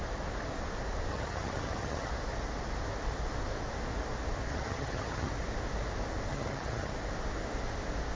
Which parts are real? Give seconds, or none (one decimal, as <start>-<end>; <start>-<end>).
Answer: 0.0-1.1; 2.1-4.5; 5.3-6.3; 6.9-8.2